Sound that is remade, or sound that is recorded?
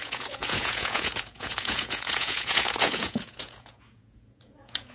remade